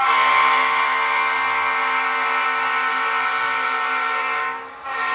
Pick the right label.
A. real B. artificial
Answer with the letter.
B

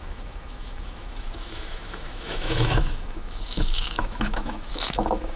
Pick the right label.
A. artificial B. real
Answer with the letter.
A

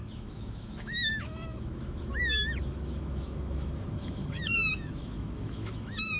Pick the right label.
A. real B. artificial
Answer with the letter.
B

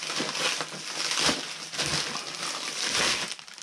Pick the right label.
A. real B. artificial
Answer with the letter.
A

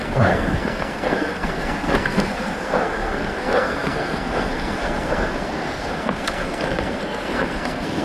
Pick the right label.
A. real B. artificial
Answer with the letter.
B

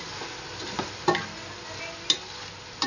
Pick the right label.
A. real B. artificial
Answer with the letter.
A